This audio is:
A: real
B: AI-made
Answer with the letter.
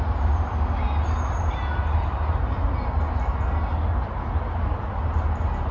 A